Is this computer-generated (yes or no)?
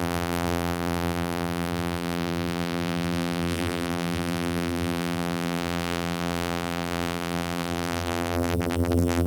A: yes